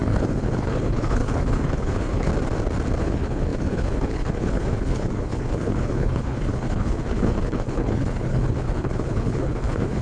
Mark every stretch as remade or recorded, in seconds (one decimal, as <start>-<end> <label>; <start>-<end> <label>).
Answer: 0.0-2.3 remade; 2.3-3.0 recorded; 3.0-10.0 remade

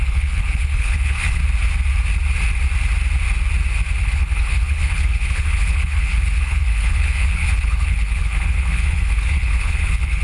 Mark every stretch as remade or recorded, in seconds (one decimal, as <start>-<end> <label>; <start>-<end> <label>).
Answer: 0.0-1.4 remade; 1.4-4.0 recorded; 4.0-10.2 remade